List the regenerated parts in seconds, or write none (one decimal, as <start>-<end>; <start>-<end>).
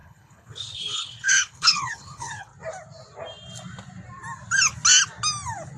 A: 0.0-2.5